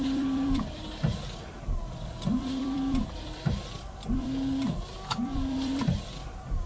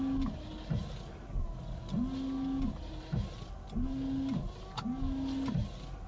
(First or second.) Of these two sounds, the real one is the second